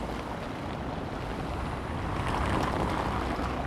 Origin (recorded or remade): recorded